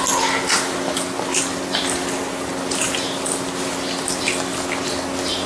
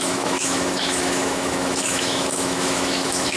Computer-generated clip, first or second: second